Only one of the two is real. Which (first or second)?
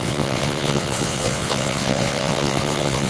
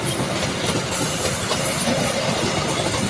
second